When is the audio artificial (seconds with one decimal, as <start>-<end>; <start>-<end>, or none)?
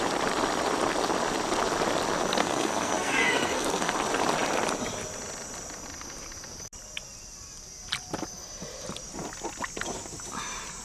2.4-3.9